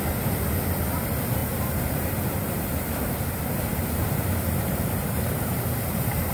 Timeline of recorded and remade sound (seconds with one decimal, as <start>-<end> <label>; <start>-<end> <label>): 0.0-1.4 recorded; 1.4-2.1 remade; 2.1-3.7 recorded; 3.7-6.3 remade